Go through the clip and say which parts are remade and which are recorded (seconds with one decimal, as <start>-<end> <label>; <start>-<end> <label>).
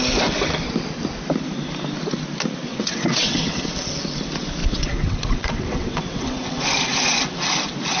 0.0-2.7 recorded; 2.7-3.7 remade; 3.7-4.6 recorded; 4.6-6.6 remade; 6.6-8.0 recorded